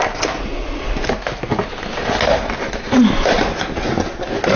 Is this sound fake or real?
real